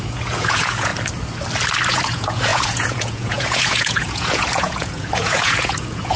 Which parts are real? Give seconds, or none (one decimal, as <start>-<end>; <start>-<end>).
0.9-1.9